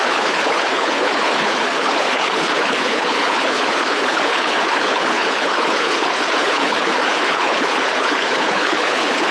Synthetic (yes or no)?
yes